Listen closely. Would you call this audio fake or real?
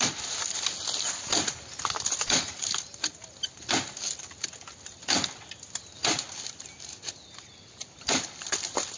real